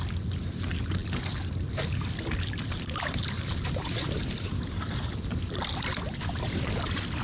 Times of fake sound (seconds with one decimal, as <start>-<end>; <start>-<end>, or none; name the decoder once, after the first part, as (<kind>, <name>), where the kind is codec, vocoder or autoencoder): none